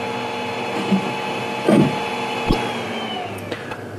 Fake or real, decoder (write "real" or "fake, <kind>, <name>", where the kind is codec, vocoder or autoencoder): real